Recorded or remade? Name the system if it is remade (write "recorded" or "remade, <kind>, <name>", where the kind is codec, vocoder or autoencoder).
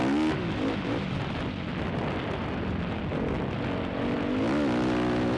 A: recorded